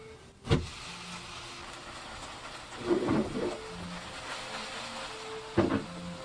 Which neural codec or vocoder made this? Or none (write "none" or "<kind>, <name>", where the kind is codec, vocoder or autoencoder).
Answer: none